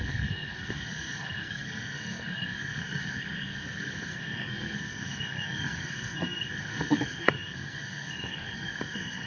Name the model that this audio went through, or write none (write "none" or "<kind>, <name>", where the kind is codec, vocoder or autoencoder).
codec, SNAC